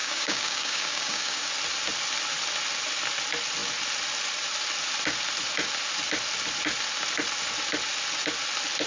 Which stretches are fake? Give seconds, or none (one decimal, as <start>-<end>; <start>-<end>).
0.0-1.5